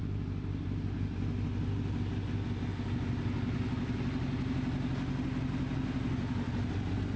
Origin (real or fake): real